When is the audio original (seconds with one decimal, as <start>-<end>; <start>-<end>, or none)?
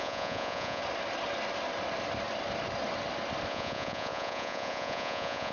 0.8-3.5